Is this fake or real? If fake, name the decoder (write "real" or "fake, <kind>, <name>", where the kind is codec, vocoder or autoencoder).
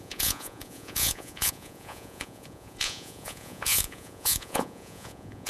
fake, vocoder, Vocos